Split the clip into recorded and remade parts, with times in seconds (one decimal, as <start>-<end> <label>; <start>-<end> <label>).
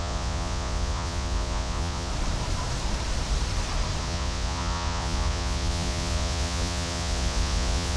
0.0-2.1 remade; 2.1-4.0 recorded; 4.0-8.0 remade